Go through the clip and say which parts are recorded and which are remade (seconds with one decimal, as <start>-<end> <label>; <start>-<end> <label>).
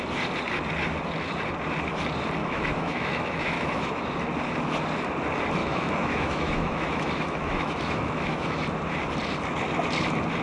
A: 0.0-2.4 recorded; 2.4-4.0 remade; 4.0-5.6 recorded; 5.6-8.6 remade; 8.6-10.4 recorded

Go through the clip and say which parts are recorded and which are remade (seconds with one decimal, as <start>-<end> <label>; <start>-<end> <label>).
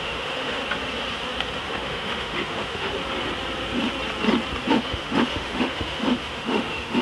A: 0.0-0.6 remade; 0.6-1.6 recorded; 1.6-2.9 remade; 2.9-4.7 recorded; 4.7-7.0 remade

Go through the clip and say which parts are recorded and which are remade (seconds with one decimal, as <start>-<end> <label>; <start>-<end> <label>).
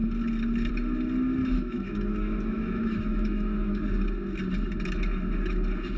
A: 0.0-1.4 recorded; 1.4-3.8 remade; 3.8-6.0 recorded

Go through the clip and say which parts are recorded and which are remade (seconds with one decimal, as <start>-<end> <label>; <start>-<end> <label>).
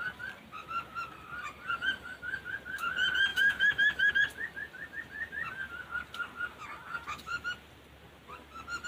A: 0.0-3.3 recorded; 3.3-4.1 remade; 4.1-8.9 recorded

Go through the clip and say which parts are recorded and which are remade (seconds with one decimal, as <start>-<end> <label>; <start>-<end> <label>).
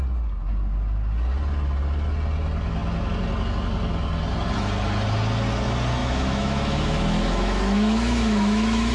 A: 0.0-6.0 recorded; 6.0-8.9 remade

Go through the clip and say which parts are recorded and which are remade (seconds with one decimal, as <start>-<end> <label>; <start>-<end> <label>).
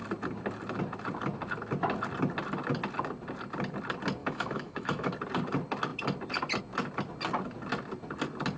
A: 0.0-4.2 recorded; 4.2-5.1 remade; 5.1-8.6 recorded